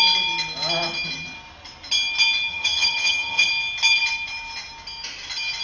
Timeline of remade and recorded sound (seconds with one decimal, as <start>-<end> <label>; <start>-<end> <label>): 0.0-2.5 recorded; 2.5-3.5 remade; 3.5-5.6 recorded